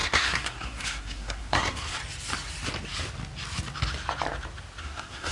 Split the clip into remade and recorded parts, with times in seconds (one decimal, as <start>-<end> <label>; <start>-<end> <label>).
0.0-2.0 remade; 2.0-4.8 recorded; 4.8-5.3 remade